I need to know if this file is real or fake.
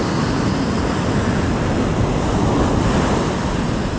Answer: real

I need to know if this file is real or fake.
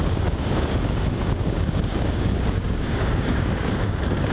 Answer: fake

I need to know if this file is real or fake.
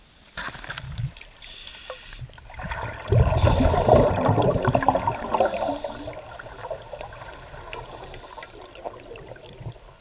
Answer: real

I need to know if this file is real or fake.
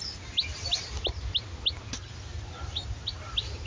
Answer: real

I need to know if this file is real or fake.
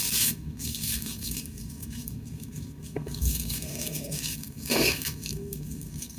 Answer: fake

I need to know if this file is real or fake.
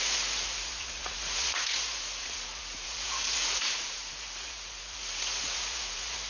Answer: fake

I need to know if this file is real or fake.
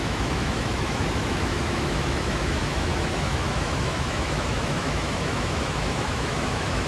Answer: fake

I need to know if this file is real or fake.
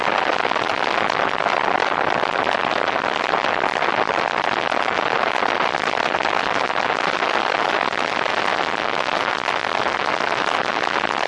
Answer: real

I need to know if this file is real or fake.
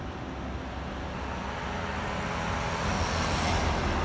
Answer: real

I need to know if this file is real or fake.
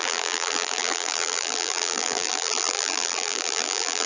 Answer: fake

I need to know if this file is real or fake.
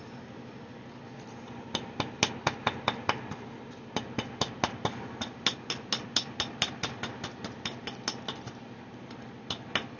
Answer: real